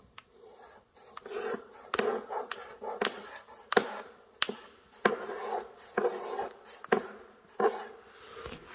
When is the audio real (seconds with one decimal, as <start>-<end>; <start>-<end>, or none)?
0.0-8.7